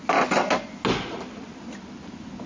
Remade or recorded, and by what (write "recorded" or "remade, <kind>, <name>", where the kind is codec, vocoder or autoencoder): recorded